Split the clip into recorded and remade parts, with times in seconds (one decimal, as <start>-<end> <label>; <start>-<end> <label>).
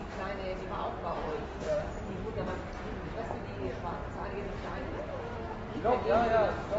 0.0-1.3 recorded; 1.3-1.9 remade; 1.9-6.8 recorded